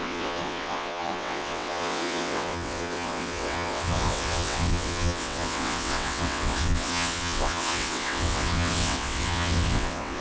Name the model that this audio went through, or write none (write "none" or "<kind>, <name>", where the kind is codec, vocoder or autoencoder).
vocoder, WaveNeXt